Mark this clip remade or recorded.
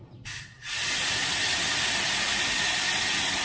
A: recorded